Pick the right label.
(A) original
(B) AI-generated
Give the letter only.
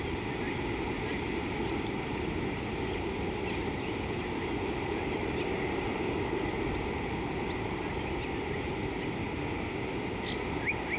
A